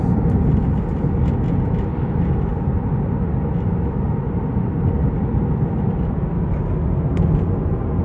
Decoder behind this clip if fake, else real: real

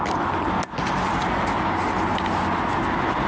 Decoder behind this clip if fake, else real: real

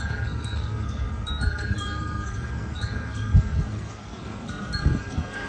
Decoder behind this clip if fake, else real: fake, codec, SNAC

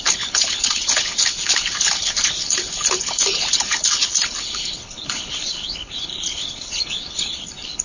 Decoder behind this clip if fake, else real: fake, codec, HILCodec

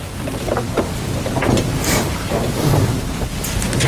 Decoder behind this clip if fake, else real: real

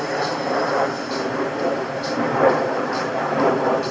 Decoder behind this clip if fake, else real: fake, vocoder, BigVGAN v2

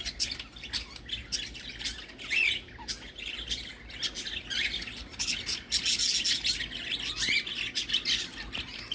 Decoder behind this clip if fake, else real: real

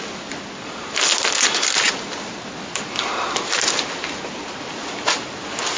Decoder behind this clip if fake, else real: real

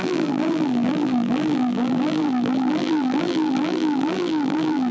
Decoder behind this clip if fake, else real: fake, vocoder, BigVGAN v2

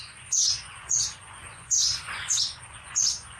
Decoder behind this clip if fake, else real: fake, vocoder, Vocos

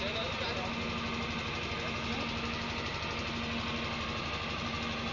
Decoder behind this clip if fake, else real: real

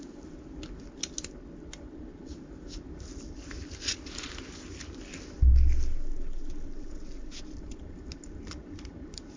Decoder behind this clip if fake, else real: real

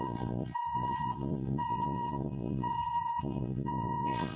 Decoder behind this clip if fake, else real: fake, vocoder, Vocos